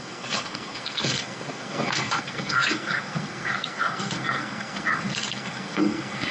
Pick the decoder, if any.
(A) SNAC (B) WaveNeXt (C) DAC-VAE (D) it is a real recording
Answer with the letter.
A